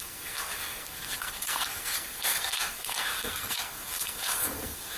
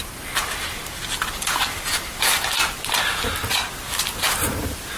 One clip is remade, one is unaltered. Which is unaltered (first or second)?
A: second